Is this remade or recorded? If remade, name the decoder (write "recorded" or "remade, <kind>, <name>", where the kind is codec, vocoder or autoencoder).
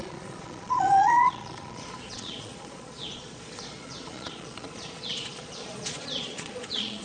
remade, vocoder, Vocos